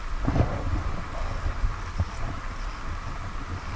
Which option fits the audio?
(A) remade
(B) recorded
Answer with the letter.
B